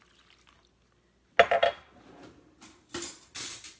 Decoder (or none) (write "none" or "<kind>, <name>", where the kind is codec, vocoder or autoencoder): none